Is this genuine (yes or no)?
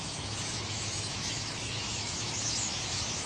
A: no